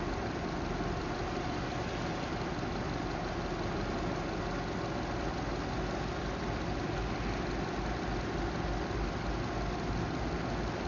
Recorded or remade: recorded